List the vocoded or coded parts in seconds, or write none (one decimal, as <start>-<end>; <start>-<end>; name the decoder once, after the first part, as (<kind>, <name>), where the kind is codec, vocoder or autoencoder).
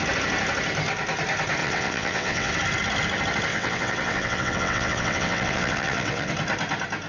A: 1.6-2.5 (vocoder, WaveNeXt); 3.5-6.3